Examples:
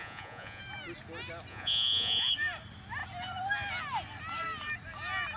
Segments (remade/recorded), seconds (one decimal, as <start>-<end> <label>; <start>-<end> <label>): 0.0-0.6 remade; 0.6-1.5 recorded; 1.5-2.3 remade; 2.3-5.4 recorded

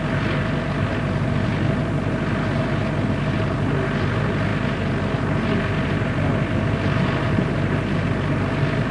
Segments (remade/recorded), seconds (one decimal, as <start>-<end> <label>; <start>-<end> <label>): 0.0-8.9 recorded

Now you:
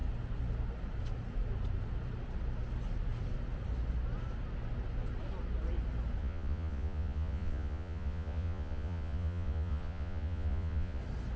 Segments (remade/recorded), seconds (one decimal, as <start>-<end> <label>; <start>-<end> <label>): 0.0-6.2 recorded; 6.2-11.0 remade; 11.0-11.4 recorded